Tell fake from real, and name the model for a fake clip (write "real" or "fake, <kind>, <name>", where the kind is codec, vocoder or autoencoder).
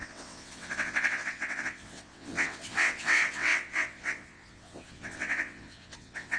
fake, vocoder, WaveNeXt